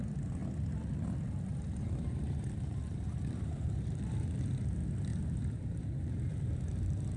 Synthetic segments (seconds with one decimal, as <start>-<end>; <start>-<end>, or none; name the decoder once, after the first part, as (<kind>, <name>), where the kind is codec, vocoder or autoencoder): 1.5-4.4 (vocoder, BigVGAN v2); 5.1-7.2